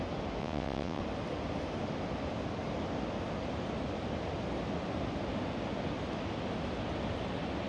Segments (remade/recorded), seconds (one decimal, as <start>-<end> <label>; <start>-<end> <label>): 0.0-0.4 recorded; 0.4-1.0 remade; 1.0-7.7 recorded